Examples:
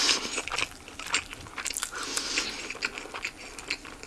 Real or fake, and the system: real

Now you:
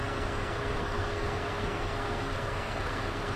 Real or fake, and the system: fake, codec, SNAC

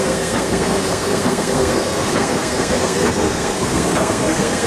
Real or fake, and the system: fake, codec, SNAC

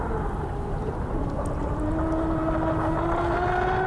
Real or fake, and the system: real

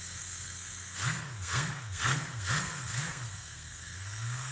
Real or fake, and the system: fake, codec, SNAC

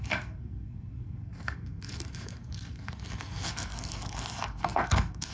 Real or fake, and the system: fake, codec, SNAC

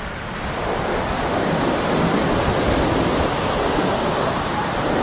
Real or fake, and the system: real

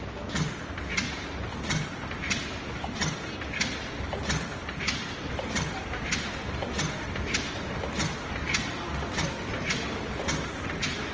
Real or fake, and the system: real